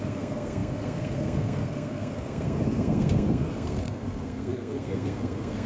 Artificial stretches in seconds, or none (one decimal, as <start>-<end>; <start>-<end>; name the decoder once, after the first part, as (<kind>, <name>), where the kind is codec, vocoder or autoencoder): 0.0-5.7 (codec, SNAC)

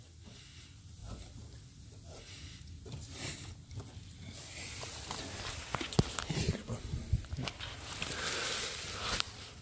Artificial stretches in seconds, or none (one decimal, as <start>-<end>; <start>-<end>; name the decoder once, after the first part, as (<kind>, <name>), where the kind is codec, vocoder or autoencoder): none

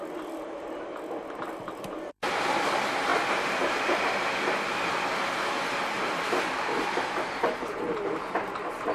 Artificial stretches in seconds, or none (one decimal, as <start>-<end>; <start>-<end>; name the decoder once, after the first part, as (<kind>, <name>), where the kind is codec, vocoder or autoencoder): none

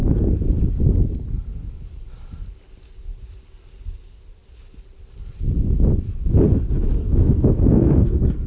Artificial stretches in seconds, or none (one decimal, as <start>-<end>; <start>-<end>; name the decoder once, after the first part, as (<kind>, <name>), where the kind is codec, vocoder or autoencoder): 7.0-8.5 (codec, SNAC)

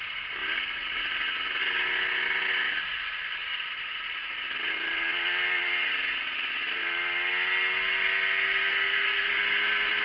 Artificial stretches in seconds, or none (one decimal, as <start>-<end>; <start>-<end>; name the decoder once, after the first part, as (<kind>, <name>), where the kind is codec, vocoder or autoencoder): 8.7-9.3 (codec, SNAC)